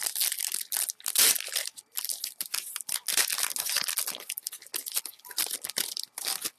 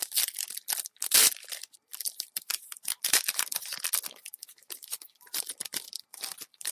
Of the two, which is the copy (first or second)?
second